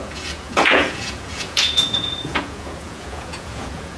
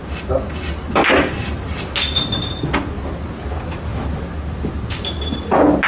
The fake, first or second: first